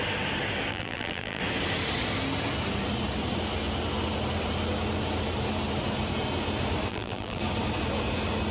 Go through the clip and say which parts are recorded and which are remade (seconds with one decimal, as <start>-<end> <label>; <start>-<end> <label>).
0.0-0.7 recorded; 0.7-1.4 remade; 1.4-6.9 recorded; 6.9-7.4 remade; 7.4-8.5 recorded